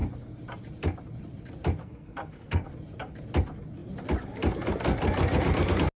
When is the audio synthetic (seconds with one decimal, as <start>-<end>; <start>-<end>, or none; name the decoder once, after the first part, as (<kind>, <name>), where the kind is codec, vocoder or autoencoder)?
1.8-2.7 (codec, SNAC)